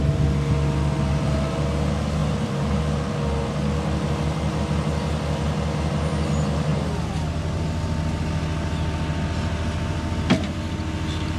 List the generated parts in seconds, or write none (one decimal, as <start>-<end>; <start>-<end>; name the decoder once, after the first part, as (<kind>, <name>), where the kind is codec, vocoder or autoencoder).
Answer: 2.2-2.8 (vocoder, BigVGAN v2); 6.7-7.3